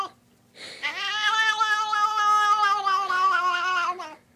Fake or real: real